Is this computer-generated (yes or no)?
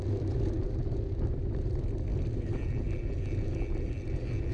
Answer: no